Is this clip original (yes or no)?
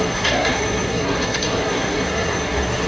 no